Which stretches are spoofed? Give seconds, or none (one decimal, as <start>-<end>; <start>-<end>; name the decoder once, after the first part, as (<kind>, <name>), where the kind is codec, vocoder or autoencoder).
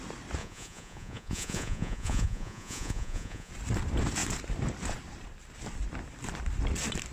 0.4-3.5 (vocoder, Vocos)